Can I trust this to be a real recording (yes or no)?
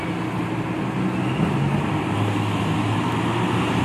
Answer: yes